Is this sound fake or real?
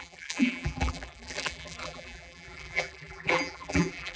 fake